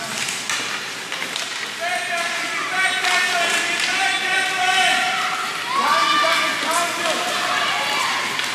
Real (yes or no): yes